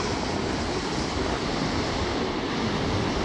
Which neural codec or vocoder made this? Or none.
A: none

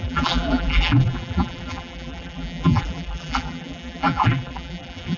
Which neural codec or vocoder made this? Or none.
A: vocoder, BigVGAN v2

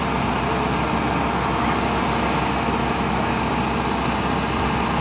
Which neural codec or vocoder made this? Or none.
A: none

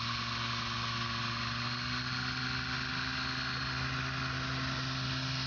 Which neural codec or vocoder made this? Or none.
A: none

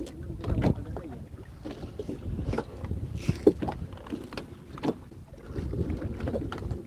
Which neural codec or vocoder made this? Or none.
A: none